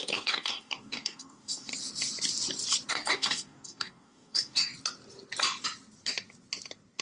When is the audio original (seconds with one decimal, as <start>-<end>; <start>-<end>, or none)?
1.7-2.9; 4.7-7.0